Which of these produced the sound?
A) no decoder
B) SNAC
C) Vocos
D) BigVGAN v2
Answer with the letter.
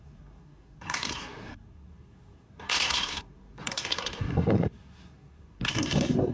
B